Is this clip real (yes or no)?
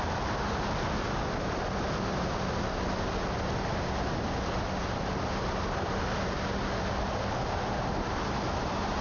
yes